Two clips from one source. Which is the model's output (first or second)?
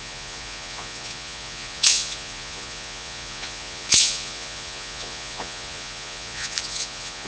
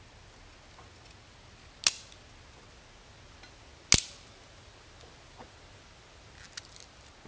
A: first